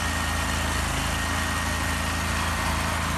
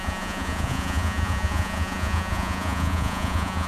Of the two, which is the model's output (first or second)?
second